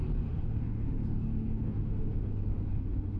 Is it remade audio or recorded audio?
remade